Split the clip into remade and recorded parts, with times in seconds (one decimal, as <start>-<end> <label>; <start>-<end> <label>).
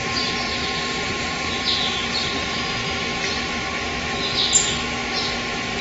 0.0-0.5 recorded; 0.5-2.3 remade; 2.3-5.8 recorded